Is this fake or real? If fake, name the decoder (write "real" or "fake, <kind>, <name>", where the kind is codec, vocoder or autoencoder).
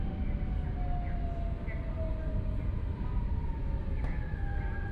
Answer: real